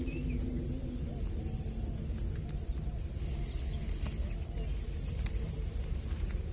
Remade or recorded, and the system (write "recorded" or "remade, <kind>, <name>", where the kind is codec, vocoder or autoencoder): recorded